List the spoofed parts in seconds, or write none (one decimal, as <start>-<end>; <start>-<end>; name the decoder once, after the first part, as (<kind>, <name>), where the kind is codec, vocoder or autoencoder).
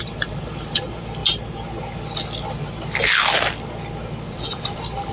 0.0-1.2 (vocoder, BigVGAN v2); 4.3-5.1